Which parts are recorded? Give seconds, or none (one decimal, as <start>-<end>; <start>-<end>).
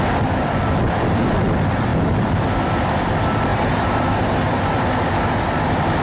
0.0-3.5; 4.8-6.0